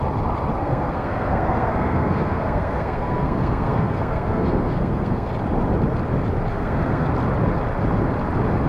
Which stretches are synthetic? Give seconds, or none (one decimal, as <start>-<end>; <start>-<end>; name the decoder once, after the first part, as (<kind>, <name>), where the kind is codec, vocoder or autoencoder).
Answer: 0.6-5.3 (codec, SNAC); 6.5-7.1